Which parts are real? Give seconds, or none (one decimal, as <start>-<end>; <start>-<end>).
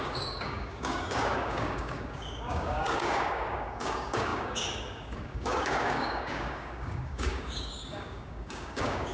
none